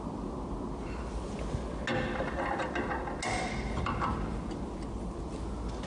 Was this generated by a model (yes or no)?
no